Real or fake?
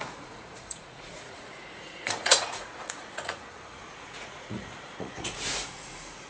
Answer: fake